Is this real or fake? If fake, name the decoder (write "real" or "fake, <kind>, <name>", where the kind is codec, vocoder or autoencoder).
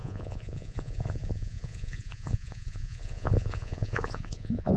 fake, vocoder, Vocos